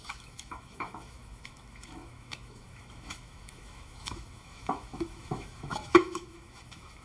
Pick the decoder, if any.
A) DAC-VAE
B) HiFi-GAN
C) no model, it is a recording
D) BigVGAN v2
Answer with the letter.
A